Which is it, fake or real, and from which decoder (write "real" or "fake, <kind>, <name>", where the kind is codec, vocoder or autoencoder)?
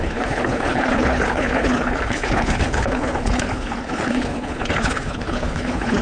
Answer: fake, codec, HILCodec